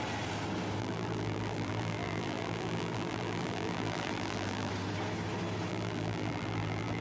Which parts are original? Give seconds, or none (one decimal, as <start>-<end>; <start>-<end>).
0.0-0.8; 4.7-5.7